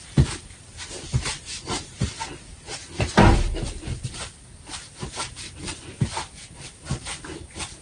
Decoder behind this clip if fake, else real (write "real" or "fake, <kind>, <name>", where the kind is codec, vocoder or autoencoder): fake, vocoder, BigVGAN v2